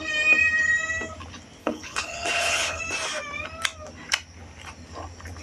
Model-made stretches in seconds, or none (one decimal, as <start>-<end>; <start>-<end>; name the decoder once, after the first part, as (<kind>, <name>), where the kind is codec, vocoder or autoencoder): 1.6-2.8 (codec, HILCodec)